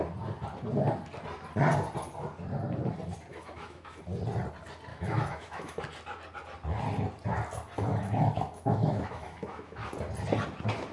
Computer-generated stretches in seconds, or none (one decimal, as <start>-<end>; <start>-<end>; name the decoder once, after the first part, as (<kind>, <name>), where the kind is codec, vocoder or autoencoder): 3.3-4.0 (autoencoder, DAC-VAE); 4.9-5.8; 7.9-9.9